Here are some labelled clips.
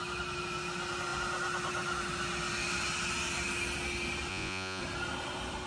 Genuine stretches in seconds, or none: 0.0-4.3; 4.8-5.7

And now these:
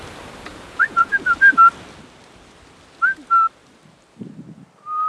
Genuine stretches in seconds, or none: 0.0-0.5; 1.1-5.1

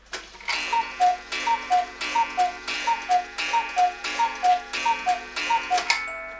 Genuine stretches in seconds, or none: 0.0-6.4

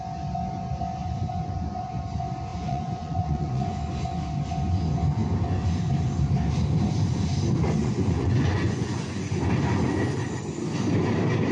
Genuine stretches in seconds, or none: 0.0-1.0; 1.9-2.5; 3.8-7.8; 9.4-11.5

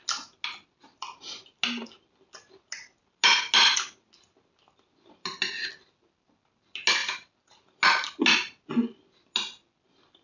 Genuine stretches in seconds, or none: 0.0-10.2

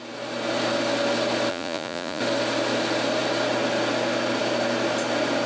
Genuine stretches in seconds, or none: 0.0-1.5; 2.2-5.5